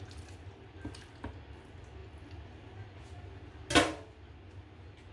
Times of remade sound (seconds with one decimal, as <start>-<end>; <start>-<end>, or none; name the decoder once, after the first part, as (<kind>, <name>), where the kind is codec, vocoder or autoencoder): none